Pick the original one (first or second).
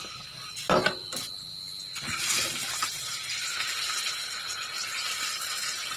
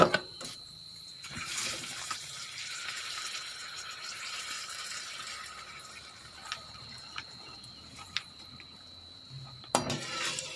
first